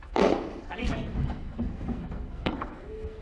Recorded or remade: remade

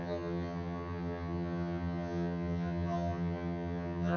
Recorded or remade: remade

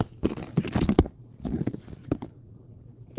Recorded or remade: remade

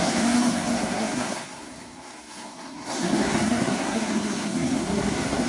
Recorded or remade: remade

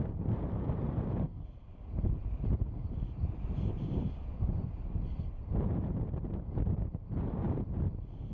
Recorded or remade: remade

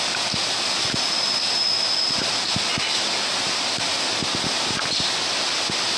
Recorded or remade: recorded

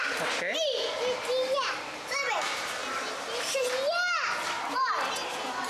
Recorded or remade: recorded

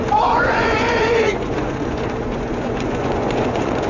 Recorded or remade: remade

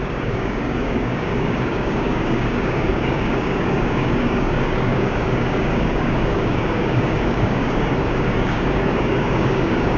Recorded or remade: remade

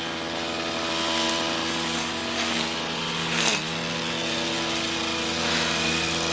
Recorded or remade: recorded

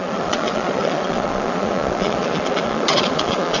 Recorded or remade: remade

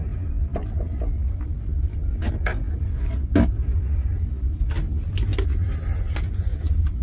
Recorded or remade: recorded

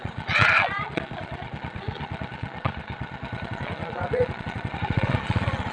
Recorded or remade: remade